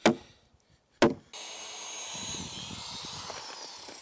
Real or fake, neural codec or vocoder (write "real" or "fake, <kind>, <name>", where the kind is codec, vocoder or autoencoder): real